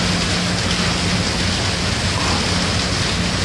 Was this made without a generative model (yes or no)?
yes